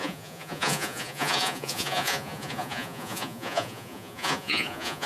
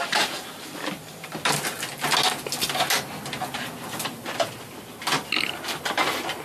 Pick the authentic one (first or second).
second